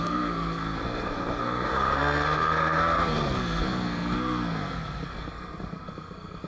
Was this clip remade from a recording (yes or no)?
yes